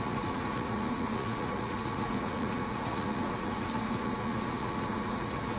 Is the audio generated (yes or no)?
yes